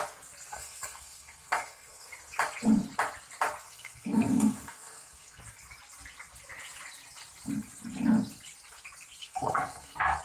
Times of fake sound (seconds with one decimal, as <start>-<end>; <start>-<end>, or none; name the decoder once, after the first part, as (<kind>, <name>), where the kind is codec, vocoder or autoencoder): 0.5-2.1 (codec, SNAC); 3.6-5.4; 9.2-10.2